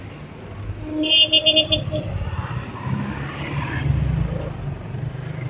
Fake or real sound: real